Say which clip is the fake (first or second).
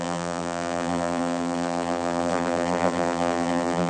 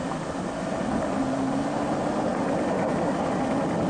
first